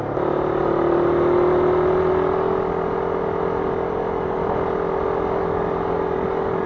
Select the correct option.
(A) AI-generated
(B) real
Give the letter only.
B